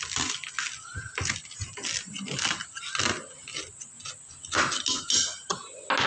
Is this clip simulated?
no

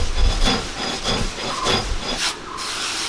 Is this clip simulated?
no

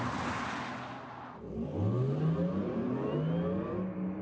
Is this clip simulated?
no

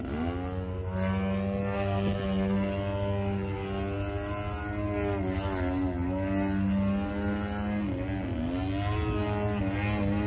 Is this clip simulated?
no